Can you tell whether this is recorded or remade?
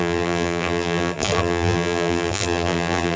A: remade